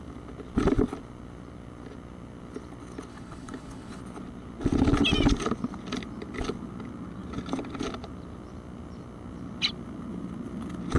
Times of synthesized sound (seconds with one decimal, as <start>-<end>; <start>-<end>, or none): 3.1-4.0